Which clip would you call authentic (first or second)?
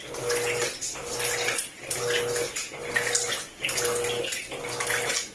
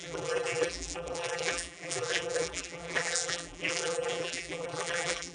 first